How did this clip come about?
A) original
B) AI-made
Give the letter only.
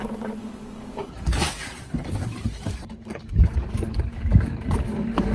B